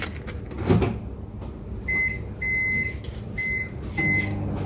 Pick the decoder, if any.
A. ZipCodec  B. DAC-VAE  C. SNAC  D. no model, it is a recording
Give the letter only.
D